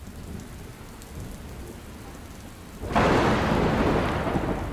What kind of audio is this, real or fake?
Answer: real